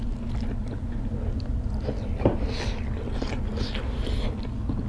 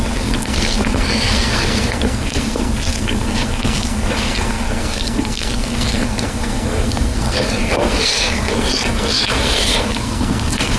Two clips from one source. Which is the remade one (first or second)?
second